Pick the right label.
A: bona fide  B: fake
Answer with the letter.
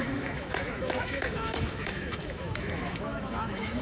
B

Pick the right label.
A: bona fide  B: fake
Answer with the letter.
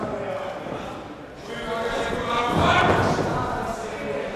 A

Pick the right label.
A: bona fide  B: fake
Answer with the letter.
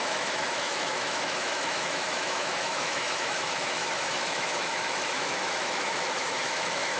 B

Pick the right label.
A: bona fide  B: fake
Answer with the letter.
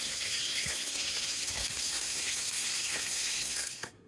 B